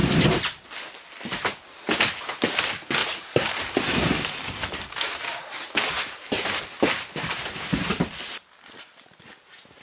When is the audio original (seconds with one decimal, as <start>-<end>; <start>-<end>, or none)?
0.0-3.0; 6.6-9.8